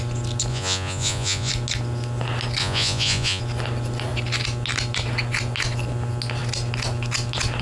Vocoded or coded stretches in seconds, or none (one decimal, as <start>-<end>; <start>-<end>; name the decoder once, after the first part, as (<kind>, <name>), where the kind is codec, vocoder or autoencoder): 0.5-1.5 (vocoder, Vocos); 2.6-3.4